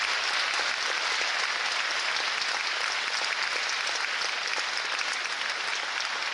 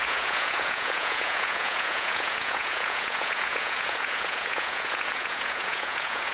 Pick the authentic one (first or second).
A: first